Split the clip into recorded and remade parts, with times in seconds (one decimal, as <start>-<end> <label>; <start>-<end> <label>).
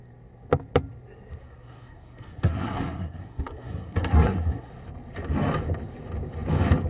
0.0-1.4 recorded; 1.4-4.7 remade; 4.7-6.9 recorded